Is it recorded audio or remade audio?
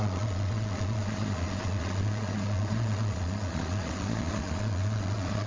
remade